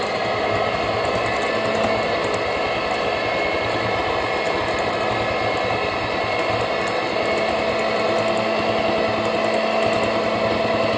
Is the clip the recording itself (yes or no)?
yes